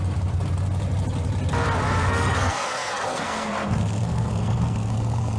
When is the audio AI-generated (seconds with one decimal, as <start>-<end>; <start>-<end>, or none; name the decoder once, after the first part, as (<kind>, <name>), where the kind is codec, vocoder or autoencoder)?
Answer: 2.0-5.4 (codec, SNAC)